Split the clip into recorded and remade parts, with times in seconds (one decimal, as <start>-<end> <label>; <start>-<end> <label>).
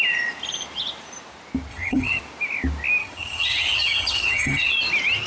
0.0-1.7 recorded; 1.7-2.2 remade; 2.2-3.0 recorded; 3.0-4.7 remade; 4.7-5.3 recorded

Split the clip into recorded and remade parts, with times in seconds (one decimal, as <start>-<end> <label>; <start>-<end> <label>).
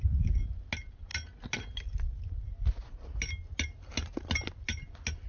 0.0-5.3 recorded